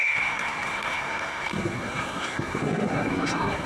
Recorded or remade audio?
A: remade